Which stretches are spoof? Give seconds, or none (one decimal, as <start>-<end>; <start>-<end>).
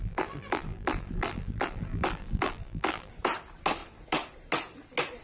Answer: 0.0-3.1